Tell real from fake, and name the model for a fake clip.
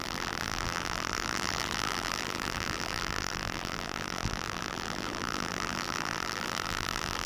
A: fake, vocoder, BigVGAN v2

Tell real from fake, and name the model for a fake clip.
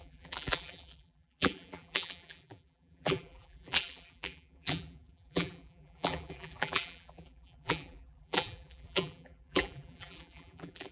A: fake, vocoder, BigVGAN v2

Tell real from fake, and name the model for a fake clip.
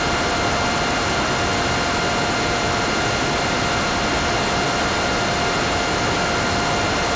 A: real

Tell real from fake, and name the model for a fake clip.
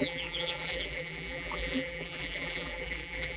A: fake, vocoder, BigVGAN v2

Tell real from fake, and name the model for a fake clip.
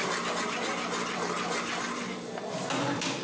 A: real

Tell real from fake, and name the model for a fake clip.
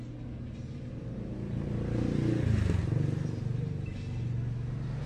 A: real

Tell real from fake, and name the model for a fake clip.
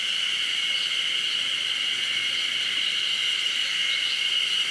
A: real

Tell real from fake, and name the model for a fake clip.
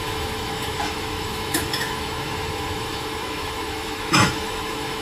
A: fake, autoencoder, DAC-VAE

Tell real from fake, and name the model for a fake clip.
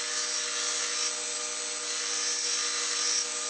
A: real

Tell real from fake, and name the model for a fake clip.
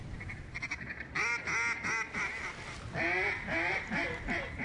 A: real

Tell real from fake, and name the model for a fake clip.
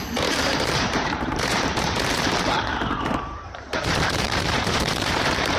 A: fake, vocoder, BigVGAN v2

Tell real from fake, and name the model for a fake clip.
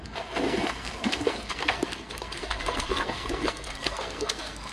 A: fake, codec, SNAC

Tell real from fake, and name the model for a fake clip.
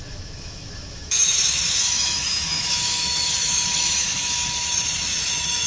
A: fake, autoencoder, DAC-VAE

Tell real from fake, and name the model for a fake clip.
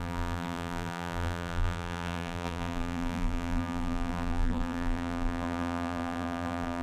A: fake, vocoder, BigVGAN v2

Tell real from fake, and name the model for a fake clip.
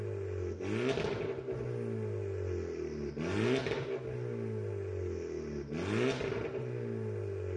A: real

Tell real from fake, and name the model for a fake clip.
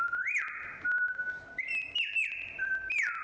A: fake, vocoder, BigVGAN v2